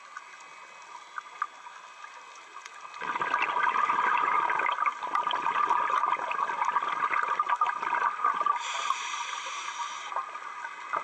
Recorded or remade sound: recorded